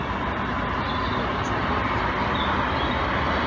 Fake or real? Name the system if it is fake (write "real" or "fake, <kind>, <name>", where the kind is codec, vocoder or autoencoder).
real